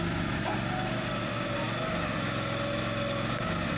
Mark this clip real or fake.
real